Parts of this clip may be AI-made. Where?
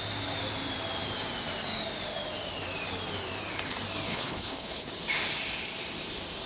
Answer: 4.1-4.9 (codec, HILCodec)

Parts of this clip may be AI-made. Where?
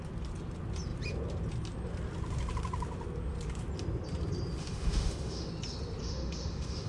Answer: 4.6-5.5 (autoencoder, DAC-VAE); 6.0-6.9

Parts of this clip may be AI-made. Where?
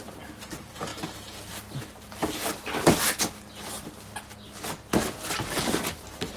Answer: none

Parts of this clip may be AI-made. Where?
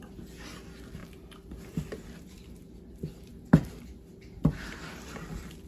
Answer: none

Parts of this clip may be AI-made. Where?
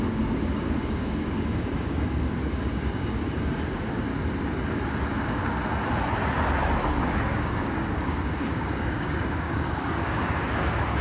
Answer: 0.0-4.1 (codec, DAC); 7.3-11.0